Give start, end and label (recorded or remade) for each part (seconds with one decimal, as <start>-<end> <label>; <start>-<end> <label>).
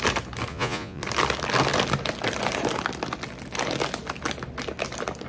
0.0-0.5 recorded; 0.5-1.0 remade; 1.0-5.3 recorded